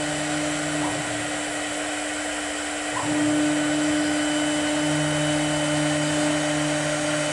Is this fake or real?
real